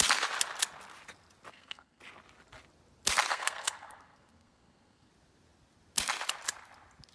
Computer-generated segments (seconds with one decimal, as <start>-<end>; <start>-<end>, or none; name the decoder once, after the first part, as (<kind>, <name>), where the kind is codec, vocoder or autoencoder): 1.5-2.0 (codec, SNAC); 3.3-5.1